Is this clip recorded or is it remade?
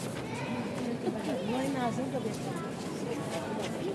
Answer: recorded